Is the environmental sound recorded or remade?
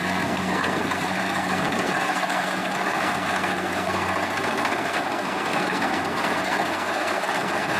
remade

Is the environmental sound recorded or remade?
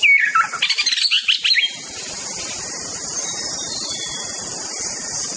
recorded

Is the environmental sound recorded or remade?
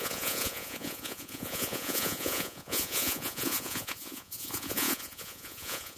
remade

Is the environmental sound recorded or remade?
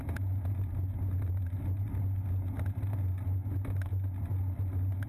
recorded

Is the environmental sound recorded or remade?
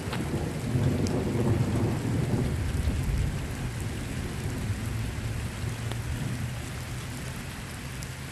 recorded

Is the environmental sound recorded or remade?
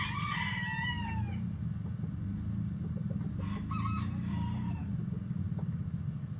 recorded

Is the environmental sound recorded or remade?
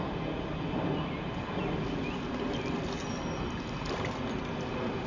recorded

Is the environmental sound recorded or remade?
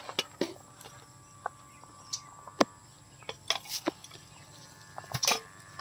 recorded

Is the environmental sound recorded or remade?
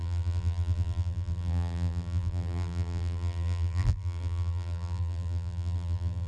remade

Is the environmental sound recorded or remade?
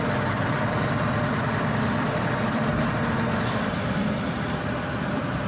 remade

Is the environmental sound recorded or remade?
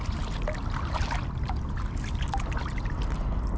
recorded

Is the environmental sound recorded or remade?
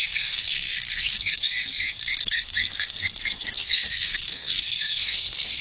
remade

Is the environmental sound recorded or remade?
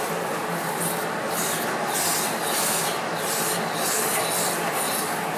recorded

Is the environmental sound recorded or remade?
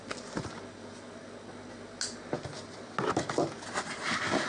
recorded